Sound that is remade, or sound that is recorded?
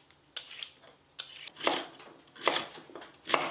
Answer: recorded